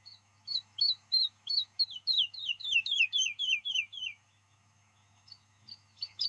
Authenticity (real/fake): fake